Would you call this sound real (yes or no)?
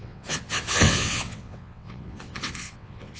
no